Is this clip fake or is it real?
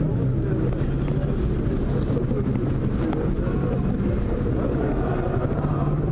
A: real